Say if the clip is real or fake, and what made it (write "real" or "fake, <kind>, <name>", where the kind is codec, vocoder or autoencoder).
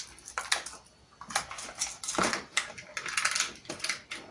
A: real